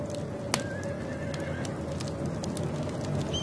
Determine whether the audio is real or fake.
real